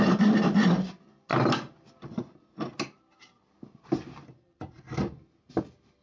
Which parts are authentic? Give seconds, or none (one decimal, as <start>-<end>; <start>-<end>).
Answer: 0.0-6.0